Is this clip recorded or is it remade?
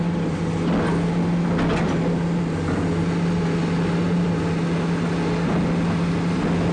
recorded